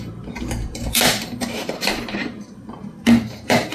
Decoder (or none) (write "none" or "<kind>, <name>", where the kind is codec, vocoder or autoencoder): vocoder, BigVGAN v2